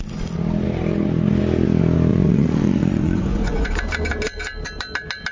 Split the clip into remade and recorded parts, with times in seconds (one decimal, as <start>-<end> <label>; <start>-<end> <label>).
0.0-2.1 recorded; 2.1-3.7 remade; 3.7-5.3 recorded